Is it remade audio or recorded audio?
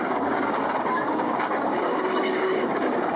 remade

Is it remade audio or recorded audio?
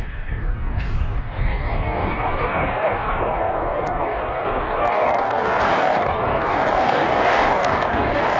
remade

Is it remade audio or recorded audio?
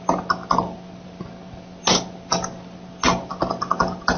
recorded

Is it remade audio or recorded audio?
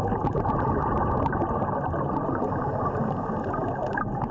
recorded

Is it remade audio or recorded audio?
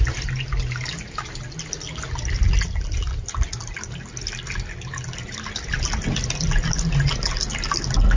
recorded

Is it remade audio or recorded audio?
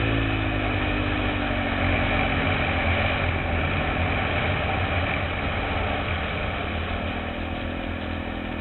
recorded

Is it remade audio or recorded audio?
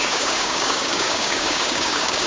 remade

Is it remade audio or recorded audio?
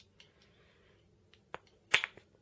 recorded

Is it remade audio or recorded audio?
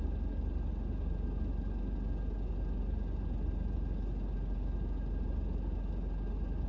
recorded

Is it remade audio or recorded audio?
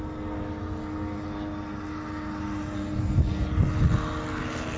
recorded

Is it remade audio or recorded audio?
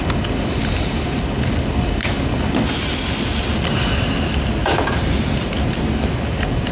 recorded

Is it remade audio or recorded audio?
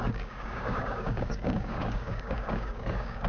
remade